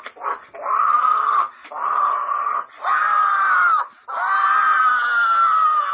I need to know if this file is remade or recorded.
recorded